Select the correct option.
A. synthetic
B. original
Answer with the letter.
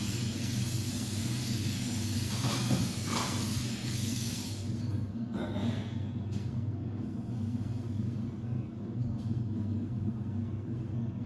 A